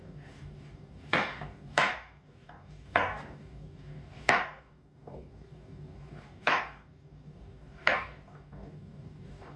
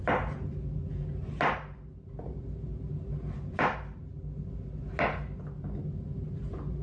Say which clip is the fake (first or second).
first